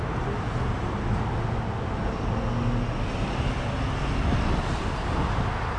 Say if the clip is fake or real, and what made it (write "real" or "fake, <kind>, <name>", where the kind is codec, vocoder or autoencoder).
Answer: real